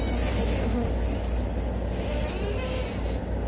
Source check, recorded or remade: recorded